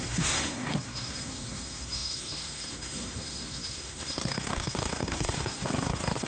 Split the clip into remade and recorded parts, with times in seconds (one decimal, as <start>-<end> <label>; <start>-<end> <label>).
0.0-6.3 remade

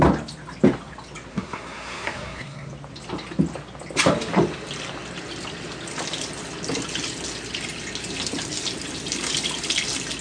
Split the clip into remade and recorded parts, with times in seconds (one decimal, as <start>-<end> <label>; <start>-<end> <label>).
0.0-1.3 recorded; 1.3-2.7 remade; 2.7-10.2 recorded

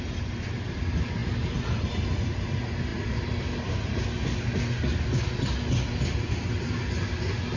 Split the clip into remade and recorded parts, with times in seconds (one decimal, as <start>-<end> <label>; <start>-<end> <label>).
0.0-7.6 recorded

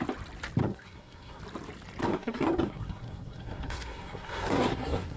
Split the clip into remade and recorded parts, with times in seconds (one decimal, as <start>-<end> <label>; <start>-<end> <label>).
0.0-0.6 recorded; 0.6-1.4 remade; 1.4-2.0 recorded; 2.0-5.2 remade

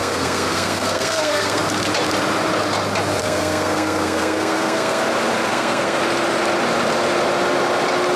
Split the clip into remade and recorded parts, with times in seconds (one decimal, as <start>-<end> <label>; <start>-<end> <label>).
0.0-1.6 remade; 1.6-3.2 recorded; 3.2-5.0 remade; 5.0-5.5 recorded; 5.5-6.0 remade; 6.0-8.2 recorded

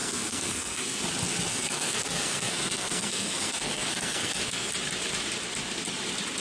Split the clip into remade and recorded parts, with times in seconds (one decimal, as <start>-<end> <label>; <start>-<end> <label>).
0.0-1.0 remade; 1.0-1.5 recorded; 1.5-4.7 remade; 4.7-6.4 recorded

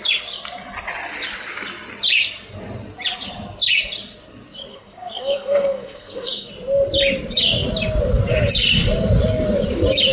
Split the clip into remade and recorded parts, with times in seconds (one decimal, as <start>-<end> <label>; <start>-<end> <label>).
0.0-4.7 recorded; 4.7-6.5 remade; 6.5-10.1 recorded

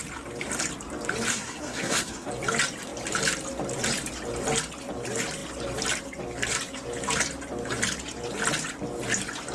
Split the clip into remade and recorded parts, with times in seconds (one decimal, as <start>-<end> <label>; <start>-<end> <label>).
0.0-1.3 recorded; 1.3-2.3 remade; 2.3-9.5 recorded